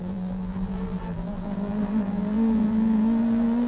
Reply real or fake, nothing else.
fake